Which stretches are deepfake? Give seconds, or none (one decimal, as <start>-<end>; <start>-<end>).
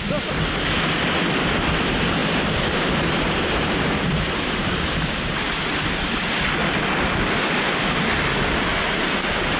2.2-6.0; 8.7-9.6